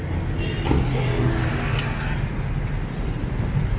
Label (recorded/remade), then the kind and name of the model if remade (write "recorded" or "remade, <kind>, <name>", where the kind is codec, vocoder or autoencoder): recorded